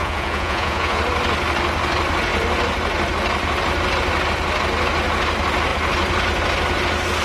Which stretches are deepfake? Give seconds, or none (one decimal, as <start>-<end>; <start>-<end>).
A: 0.0-1.0